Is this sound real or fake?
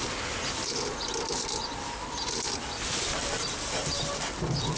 real